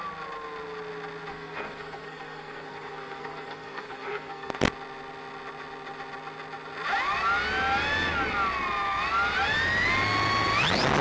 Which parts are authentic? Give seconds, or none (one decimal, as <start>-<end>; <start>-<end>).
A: 0.0-1.3; 4.5-11.0